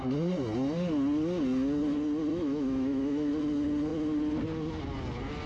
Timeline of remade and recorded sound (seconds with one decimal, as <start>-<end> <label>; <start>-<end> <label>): 0.0-2.3 recorded; 2.3-3.3 remade; 3.3-5.5 recorded